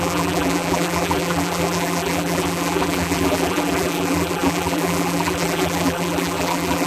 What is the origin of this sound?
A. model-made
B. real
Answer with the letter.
A